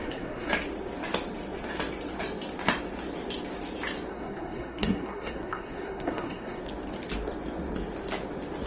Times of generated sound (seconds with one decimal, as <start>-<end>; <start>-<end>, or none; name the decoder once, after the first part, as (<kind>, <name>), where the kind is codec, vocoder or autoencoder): 0.0-0.5 (codec, SNAC); 4.1-6.6